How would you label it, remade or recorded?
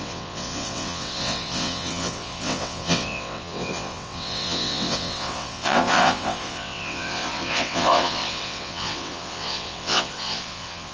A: remade